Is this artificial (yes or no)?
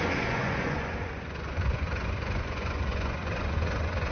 yes